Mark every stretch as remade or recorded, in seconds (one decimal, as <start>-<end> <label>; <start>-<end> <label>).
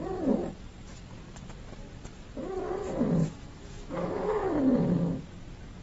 0.0-3.2 recorded; 3.2-4.6 remade; 4.6-5.8 recorded